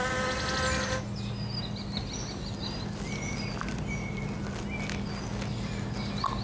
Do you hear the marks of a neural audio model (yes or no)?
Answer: no